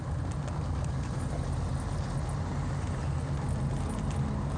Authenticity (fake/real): real